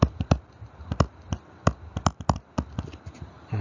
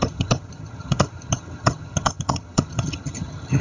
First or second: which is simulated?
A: second